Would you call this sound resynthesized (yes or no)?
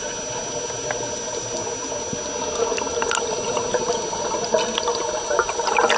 no